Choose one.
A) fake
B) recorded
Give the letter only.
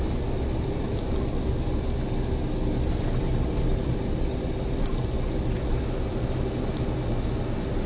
B